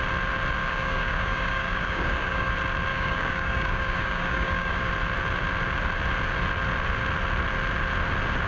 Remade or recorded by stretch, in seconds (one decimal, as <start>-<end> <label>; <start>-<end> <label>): 0.0-0.6 recorded; 0.6-2.5 remade; 2.5-2.9 recorded; 2.9-4.9 remade; 4.9-8.5 recorded